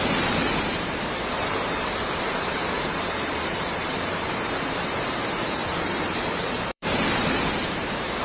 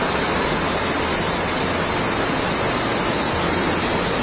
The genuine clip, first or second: second